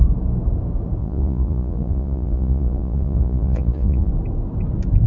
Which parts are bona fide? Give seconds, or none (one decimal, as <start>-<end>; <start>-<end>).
0.0-1.0; 4.1-5.1